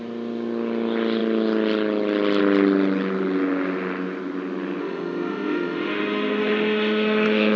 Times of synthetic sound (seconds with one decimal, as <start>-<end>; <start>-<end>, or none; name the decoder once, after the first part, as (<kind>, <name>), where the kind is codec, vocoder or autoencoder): 4.8-7.6 (autoencoder, DAC-VAE)